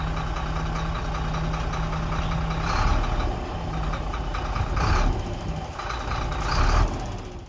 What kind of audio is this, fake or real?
real